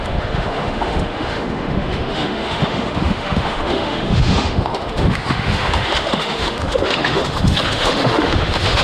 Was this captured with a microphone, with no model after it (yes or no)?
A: no